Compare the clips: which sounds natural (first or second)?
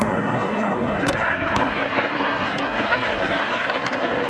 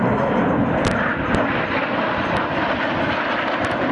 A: second